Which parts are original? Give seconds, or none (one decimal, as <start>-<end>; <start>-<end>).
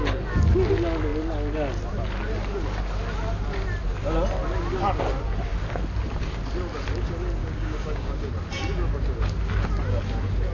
0.0-7.4; 8.3-10.5